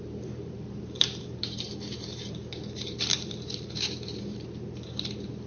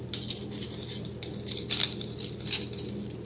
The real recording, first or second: second